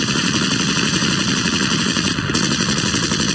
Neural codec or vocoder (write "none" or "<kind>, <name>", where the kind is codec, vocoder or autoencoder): vocoder, Vocos